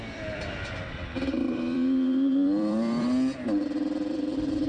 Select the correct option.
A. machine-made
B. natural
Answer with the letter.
A